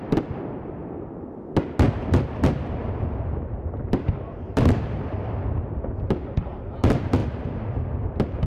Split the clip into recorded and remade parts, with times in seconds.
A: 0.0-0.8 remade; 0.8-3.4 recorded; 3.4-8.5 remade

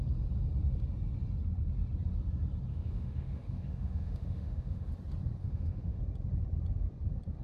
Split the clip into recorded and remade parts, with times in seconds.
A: 0.0-2.7 recorded; 2.7-4.9 remade; 4.9-5.4 recorded; 5.4-6.0 remade; 6.0-7.4 recorded

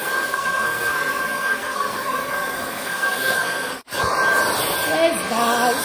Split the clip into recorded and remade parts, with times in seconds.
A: 0.0-4.1 remade; 4.1-5.8 recorded

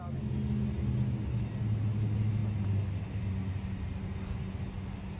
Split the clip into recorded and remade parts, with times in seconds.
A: 0.0-5.2 recorded

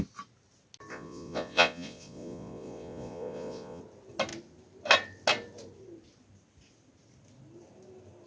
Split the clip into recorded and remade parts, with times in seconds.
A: 0.0-0.9 recorded; 0.9-3.8 remade; 3.8-8.3 recorded